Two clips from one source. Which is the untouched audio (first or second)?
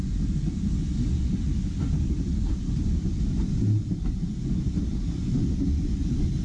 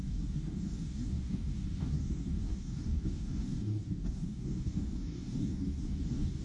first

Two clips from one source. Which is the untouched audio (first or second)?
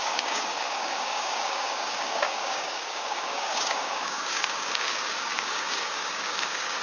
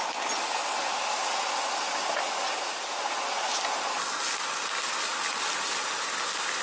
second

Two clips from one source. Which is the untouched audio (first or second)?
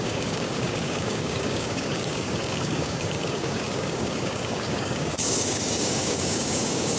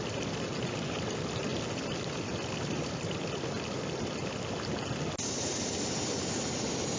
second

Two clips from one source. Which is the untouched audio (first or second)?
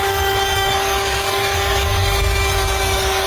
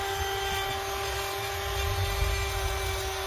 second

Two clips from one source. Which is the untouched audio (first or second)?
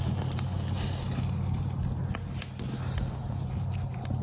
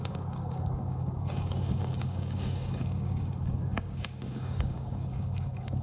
first